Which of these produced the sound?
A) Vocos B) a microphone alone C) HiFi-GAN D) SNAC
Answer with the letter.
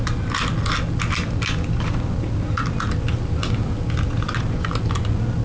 B